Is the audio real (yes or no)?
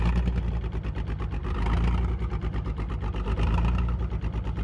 yes